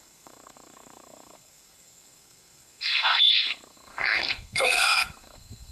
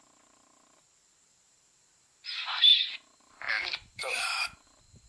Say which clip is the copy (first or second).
first